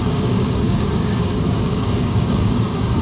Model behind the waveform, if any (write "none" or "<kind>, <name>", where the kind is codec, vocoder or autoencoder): codec, DAC